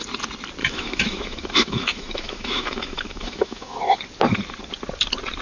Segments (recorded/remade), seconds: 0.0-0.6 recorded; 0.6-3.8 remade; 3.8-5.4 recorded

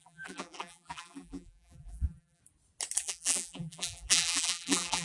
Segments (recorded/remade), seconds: 0.0-2.4 remade; 2.4-3.0 recorded; 3.0-5.0 remade

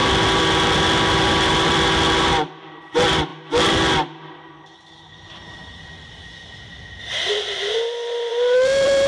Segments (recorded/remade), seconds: 0.0-1.1 recorded; 1.1-3.3 remade; 3.3-4.5 recorded; 4.5-5.4 remade; 5.4-8.3 recorded; 8.3-9.1 remade

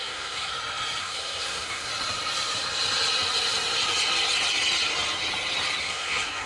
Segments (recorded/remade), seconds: 0.0-0.5 remade; 0.5-1.0 recorded; 1.0-1.9 remade; 1.9-5.8 recorded; 5.8-6.5 remade

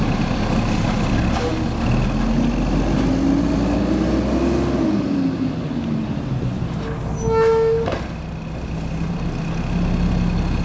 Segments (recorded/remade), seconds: 0.0-10.6 recorded

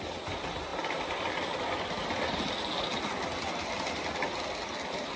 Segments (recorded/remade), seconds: 0.0-5.2 recorded